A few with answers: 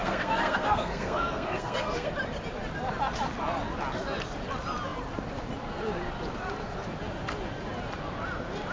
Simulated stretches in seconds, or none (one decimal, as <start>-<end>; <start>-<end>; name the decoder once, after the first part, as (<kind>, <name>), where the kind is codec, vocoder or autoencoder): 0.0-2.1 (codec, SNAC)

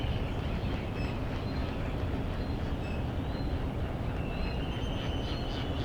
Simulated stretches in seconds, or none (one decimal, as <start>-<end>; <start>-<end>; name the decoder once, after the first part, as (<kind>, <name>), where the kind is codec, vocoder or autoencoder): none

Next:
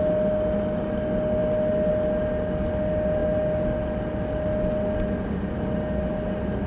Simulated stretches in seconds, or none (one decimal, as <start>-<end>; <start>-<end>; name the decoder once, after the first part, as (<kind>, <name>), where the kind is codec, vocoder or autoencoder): none

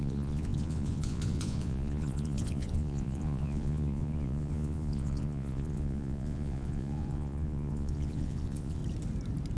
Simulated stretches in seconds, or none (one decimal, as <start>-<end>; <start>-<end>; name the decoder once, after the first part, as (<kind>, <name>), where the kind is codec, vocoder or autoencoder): 0.0-8.8 (vocoder, Vocos)

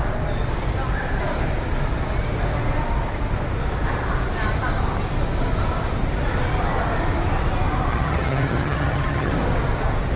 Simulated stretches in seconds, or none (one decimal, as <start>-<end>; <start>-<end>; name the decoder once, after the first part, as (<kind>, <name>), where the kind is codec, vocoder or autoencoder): 7.9-9.3 (vocoder, HiFi-GAN)

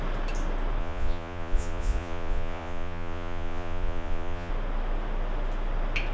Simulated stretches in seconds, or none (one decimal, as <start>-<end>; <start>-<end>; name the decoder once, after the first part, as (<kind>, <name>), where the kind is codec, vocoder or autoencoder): 0.8-4.5 (vocoder, Vocos)

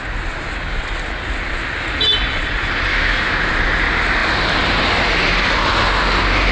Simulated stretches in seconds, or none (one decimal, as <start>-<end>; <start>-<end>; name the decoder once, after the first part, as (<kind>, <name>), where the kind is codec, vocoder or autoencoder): 2.9-3.5 (autoencoder, DAC-VAE)

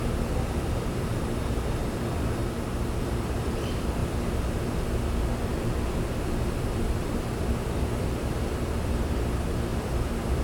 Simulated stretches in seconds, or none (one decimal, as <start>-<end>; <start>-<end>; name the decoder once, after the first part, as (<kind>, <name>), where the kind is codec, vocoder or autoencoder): 0.0-2.4 (vocoder, BigVGAN v2); 3.0-4.0; 5.1-10.4